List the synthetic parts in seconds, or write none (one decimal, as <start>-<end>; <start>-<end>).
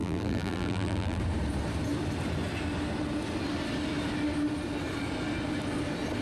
0.0-1.2